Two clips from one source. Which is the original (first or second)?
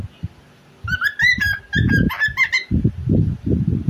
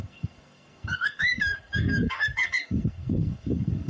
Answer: first